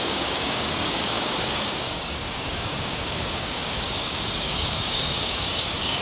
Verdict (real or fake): fake